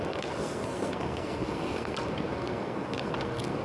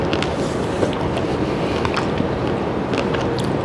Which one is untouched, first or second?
second